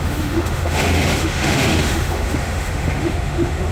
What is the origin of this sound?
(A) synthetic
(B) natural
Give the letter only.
A